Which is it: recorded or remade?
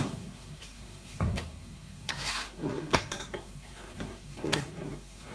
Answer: remade